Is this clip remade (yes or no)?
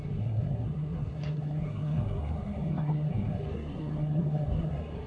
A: yes